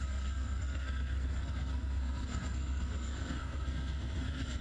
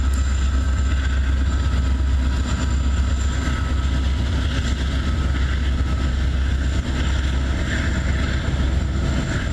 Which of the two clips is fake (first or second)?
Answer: first